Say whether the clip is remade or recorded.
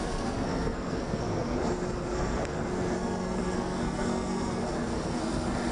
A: remade